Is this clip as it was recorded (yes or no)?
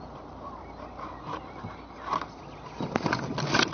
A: yes